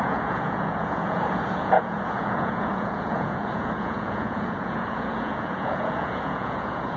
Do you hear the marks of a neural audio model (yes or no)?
yes